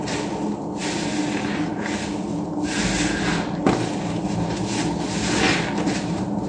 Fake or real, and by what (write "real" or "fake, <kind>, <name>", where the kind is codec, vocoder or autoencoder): real